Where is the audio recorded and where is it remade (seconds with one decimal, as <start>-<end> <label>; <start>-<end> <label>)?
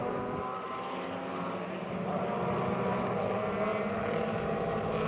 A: 0.0-3.7 recorded; 3.7-5.1 remade